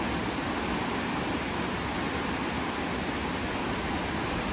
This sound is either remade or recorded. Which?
recorded